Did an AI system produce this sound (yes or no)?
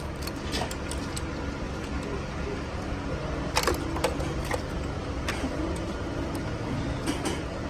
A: no